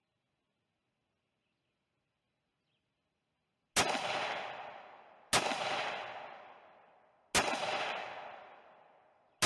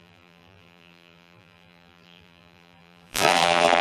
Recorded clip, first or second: first